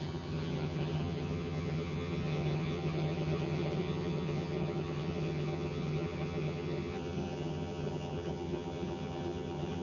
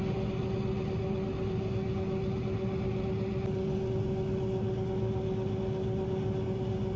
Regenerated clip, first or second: first